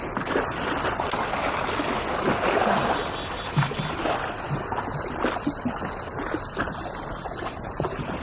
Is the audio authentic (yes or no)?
yes